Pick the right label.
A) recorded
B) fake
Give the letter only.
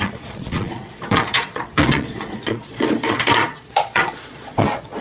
B